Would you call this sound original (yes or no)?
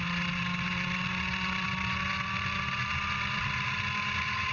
yes